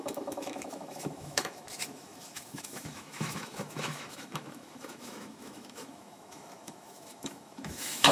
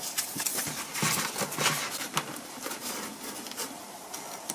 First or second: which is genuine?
second